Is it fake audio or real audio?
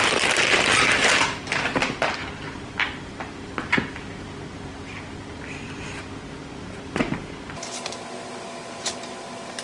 real